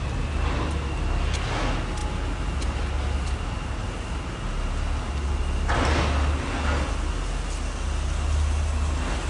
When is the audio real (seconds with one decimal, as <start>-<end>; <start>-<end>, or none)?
0.0-9.3